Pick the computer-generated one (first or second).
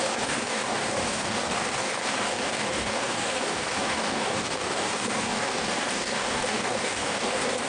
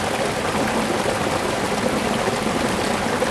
first